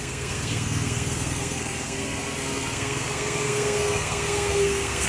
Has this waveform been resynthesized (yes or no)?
yes